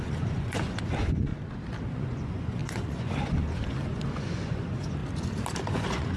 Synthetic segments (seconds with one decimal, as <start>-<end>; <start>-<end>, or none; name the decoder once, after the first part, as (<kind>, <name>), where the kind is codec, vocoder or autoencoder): 0.0-1.3 (vocoder, Vocos); 1.9-5.0; 5.7-6.2